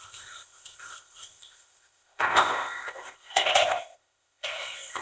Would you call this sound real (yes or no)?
no